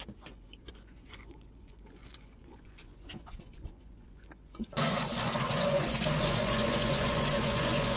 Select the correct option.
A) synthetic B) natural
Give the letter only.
A